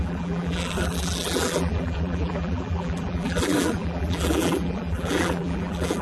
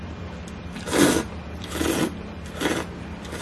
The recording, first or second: second